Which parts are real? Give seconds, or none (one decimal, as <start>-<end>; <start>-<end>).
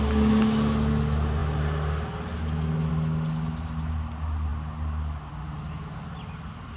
0.0-6.8